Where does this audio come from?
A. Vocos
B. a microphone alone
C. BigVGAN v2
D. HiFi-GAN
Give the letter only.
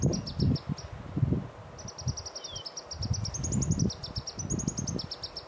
B